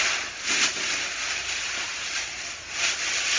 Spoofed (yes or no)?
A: no